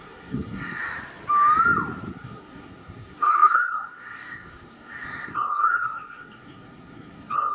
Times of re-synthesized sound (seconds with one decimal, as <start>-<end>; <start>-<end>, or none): 0.0-0.8; 2.1-7.5